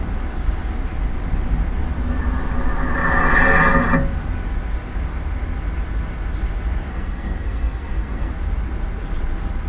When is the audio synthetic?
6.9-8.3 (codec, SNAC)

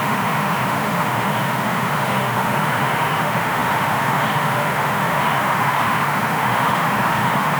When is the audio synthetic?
0.0-7.6 (autoencoder, DAC-VAE)

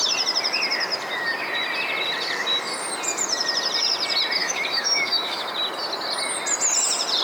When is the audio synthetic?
4.4-5.5 (autoencoder, DAC-VAE)